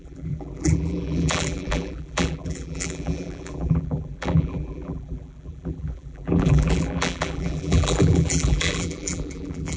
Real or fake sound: fake